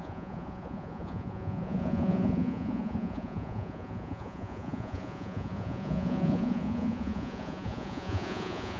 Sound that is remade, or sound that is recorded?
remade